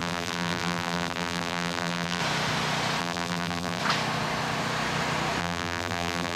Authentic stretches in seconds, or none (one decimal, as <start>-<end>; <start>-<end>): 2.2-3.0; 3.8-5.4

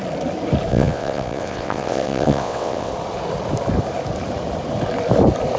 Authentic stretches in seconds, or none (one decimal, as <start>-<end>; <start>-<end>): 0.0-0.7; 2.9-5.6

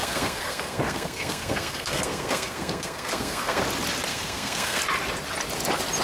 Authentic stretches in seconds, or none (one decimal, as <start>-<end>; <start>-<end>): 3.6-4.1; 4.8-6.0

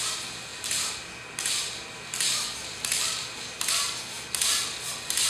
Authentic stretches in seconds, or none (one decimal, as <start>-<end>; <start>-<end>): 0.0-5.3

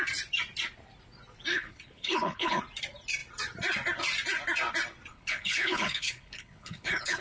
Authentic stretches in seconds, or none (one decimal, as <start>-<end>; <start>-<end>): 0.0-1.5; 2.6-5.1